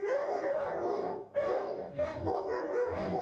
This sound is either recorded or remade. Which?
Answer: remade